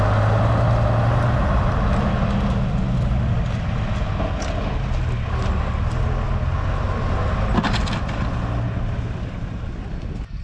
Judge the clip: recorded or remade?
recorded